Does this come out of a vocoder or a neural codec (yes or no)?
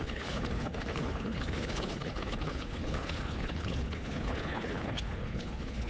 yes